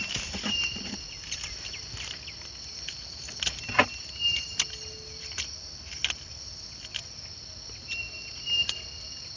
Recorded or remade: recorded